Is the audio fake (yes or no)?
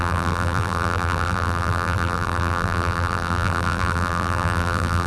yes